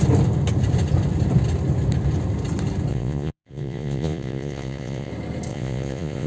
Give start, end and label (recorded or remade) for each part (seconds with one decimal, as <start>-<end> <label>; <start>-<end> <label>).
0.0-2.9 recorded; 2.9-5.1 remade; 5.1-5.5 recorded; 5.5-6.3 remade